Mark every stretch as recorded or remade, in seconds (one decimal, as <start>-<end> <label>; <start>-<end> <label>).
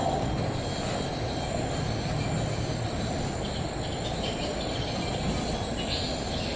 0.0-6.6 recorded